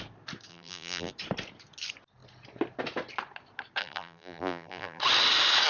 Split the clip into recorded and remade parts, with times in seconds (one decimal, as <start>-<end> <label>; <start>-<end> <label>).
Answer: 0.0-0.5 recorded; 0.5-1.1 remade; 1.1-3.8 recorded; 3.8-5.0 remade; 5.0-5.7 recorded